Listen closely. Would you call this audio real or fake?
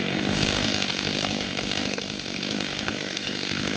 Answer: fake